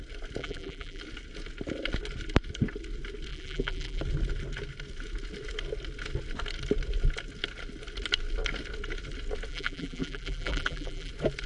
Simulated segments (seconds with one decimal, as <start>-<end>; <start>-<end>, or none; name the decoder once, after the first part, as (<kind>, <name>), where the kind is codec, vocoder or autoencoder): 0.4-1.0 (vocoder, BigVGAN v2); 3.3-4.0; 9.5-11.1